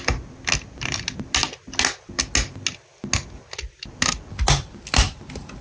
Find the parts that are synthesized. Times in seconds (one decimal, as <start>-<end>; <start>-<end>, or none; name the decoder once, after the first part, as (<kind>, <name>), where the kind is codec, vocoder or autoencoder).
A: none